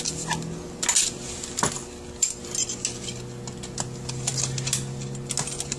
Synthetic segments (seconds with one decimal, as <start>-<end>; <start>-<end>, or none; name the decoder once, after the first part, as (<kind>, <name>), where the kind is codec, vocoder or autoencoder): none